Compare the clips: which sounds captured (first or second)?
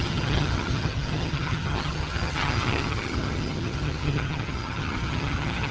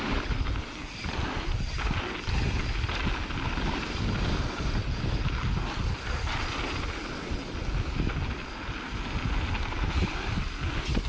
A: second